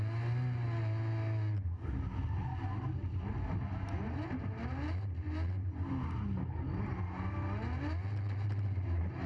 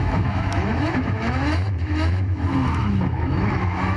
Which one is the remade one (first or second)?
second